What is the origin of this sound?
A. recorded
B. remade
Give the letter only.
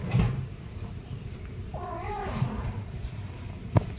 B